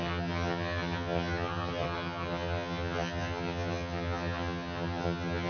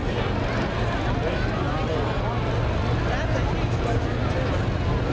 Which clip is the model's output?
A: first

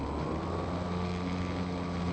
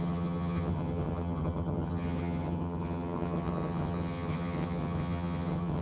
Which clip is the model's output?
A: second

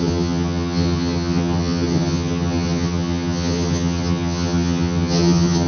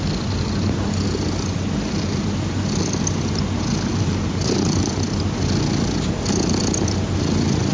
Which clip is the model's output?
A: first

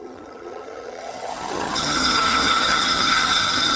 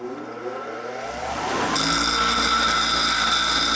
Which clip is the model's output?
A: first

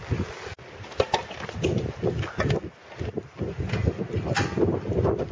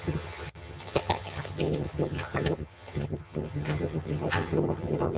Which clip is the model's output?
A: second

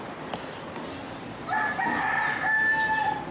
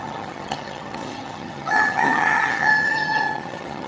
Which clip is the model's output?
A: second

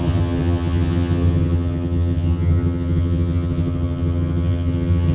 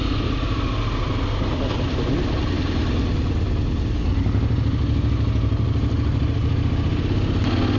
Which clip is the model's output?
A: first